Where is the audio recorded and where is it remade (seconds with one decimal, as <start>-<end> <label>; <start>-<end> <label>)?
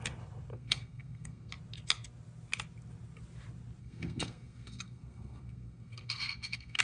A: 0.0-0.5 recorded; 0.5-1.5 remade; 1.5-3.8 recorded; 3.8-6.8 remade